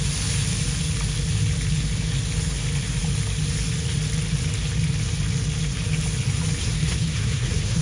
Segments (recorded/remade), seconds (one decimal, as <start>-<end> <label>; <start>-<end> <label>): 0.0-6.6 recorded; 6.6-7.8 remade